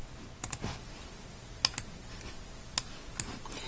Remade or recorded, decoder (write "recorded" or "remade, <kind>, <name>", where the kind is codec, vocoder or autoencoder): recorded